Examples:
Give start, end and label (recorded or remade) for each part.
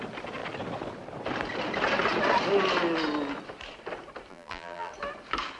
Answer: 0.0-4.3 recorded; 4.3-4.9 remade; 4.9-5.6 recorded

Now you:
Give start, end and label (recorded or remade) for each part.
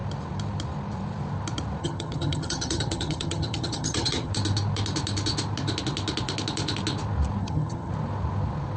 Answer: 0.0-1.8 recorded; 1.8-4.3 remade; 4.3-7.4 recorded; 7.4-7.9 remade; 7.9-8.8 recorded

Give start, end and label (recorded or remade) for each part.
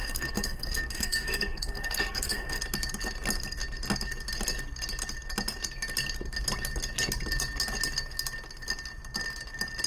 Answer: 0.0-2.6 remade; 2.6-9.9 recorded